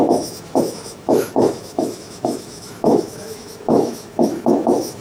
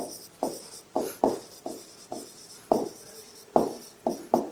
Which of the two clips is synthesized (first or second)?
first